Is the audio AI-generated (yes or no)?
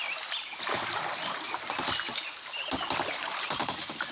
no